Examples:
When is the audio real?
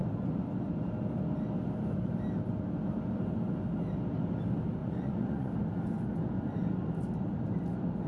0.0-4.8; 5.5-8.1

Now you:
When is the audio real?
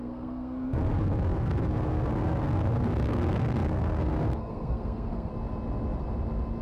5.3-6.6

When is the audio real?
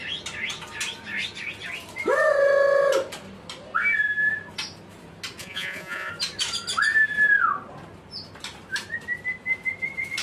0.0-5.4; 6.1-10.2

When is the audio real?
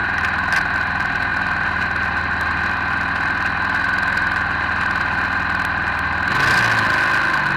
0.0-7.6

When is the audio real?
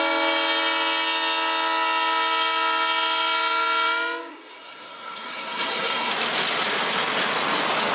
0.0-4.3; 6.1-7.9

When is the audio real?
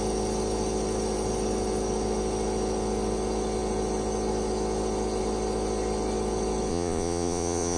0.0-6.7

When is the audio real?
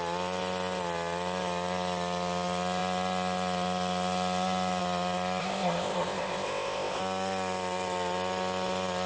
0.0-5.4; 7.0-9.1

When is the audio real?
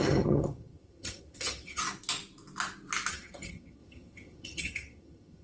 1.8-3.1